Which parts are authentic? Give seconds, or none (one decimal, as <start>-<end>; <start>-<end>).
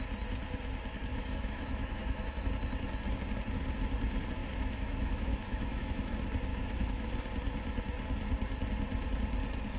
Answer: 0.0-1.1; 2.5-4.4; 6.1-6.5; 7.1-9.8